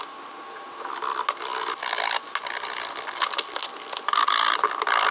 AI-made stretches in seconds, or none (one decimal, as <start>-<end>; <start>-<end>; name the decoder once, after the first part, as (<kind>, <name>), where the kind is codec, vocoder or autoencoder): none